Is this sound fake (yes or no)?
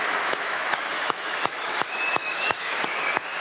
yes